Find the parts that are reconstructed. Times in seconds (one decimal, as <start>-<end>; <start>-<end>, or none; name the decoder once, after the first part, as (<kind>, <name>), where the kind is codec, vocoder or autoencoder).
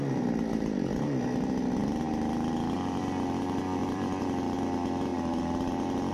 1.8-3.0 (vocoder, BigVGAN v2); 3.8-4.6; 5.1-6.1